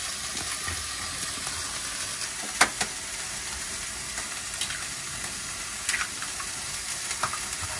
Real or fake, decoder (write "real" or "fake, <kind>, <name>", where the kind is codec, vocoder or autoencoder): real